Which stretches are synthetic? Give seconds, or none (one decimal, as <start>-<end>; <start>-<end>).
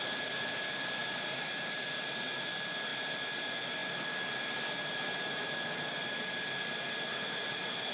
none